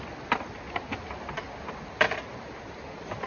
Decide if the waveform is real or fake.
real